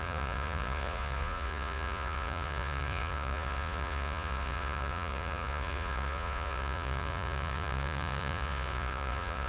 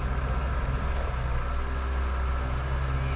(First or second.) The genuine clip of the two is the second